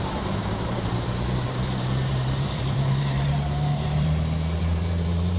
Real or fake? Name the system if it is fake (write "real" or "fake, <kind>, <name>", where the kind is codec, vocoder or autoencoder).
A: fake, vocoder, BigVGAN v2